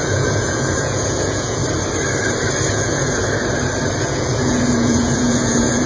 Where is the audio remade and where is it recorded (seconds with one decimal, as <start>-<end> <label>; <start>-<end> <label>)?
0.0-1.6 remade; 1.6-2.7 recorded; 2.7-3.2 remade; 3.2-4.0 recorded; 4.0-5.9 remade